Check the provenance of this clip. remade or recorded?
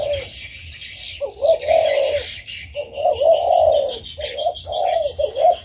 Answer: recorded